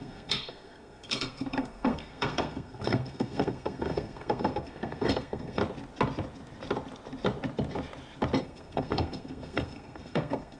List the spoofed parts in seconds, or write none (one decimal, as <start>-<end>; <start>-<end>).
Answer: 0.0-5.6; 8.4-10.6